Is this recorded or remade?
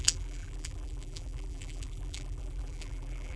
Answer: remade